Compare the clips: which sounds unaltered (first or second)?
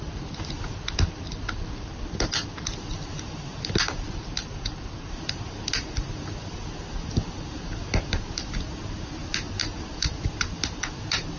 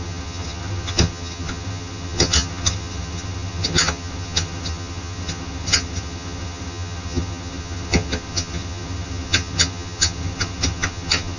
first